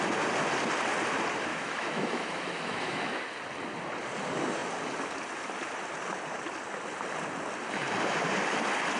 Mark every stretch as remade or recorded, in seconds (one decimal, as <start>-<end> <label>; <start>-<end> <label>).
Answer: 0.0-1.5 recorded; 1.5-3.2 remade; 3.2-9.0 recorded

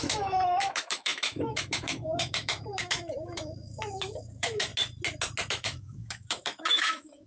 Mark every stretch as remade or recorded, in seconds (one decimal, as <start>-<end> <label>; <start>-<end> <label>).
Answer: 0.0-4.7 remade; 4.7-5.5 recorded; 5.5-7.3 remade

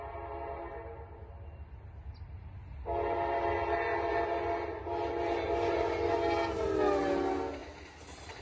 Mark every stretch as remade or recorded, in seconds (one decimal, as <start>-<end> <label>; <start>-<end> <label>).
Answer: 0.0-8.4 recorded

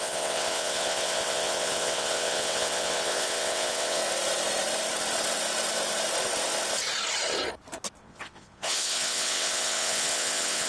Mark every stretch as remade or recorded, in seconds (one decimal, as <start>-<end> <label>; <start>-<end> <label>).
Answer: 0.0-4.0 remade; 4.0-8.0 recorded; 8.0-10.7 remade

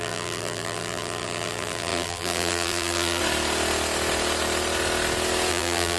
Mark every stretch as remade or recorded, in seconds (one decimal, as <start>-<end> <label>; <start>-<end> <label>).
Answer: 0.0-3.2 remade; 3.2-5.5 recorded; 5.5-6.0 remade

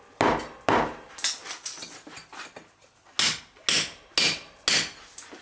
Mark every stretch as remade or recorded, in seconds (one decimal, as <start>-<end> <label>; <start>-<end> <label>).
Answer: 0.0-5.4 recorded